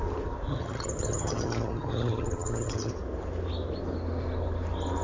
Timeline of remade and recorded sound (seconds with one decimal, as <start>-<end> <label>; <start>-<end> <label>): 0.0-0.5 recorded; 0.5-2.9 remade; 2.9-5.0 recorded